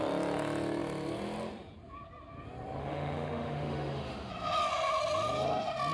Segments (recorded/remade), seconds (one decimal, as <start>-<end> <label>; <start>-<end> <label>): 0.0-2.8 recorded; 2.8-4.3 remade; 4.3-5.9 recorded